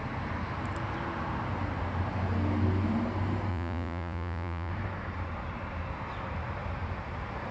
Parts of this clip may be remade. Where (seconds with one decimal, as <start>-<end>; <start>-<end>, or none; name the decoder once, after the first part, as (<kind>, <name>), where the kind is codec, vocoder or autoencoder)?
3.5-4.7 (vocoder, Vocos)